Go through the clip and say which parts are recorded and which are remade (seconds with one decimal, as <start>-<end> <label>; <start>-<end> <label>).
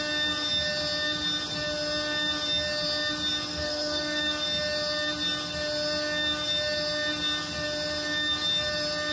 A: 0.0-3.5 recorded; 3.5-4.2 remade; 4.2-9.1 recorded